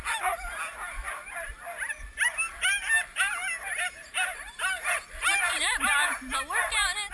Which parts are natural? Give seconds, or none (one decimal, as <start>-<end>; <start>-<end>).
0.0-3.1; 6.4-7.1